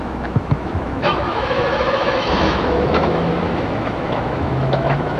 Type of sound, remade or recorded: remade